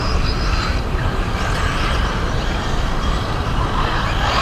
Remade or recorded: recorded